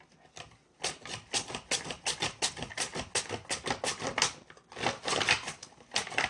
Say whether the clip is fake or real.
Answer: real